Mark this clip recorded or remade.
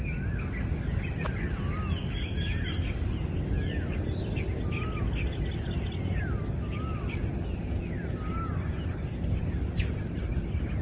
recorded